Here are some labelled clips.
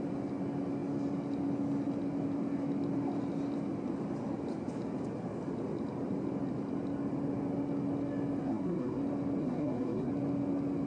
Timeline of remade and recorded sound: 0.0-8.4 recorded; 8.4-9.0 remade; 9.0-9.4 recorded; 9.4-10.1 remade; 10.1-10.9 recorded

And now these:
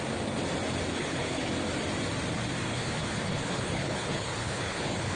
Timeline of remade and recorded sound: 0.0-0.9 recorded; 0.9-1.5 remade; 1.5-2.7 recorded; 2.7-5.2 remade